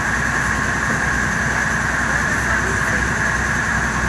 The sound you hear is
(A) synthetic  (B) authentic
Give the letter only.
B